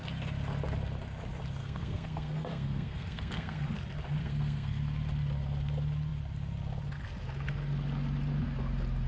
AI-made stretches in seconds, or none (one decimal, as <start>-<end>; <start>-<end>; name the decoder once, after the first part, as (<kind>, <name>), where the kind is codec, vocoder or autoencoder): 1.6-3.6 (codec, SNAC); 4.2-4.8